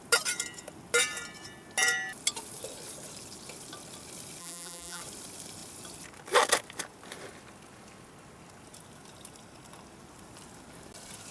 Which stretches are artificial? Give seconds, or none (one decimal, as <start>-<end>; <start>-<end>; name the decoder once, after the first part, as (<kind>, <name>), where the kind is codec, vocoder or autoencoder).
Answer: 4.4-5.0 (vocoder, BigVGAN v2)